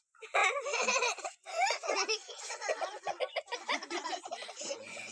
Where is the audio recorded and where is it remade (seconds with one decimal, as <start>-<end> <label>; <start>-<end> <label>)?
0.0-5.1 remade